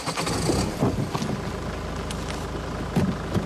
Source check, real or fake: real